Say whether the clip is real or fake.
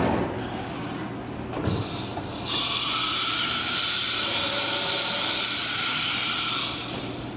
real